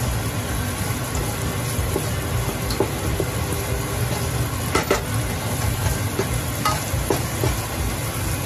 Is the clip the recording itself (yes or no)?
yes